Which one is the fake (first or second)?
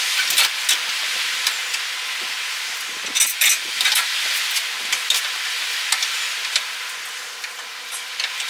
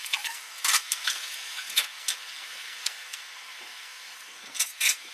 second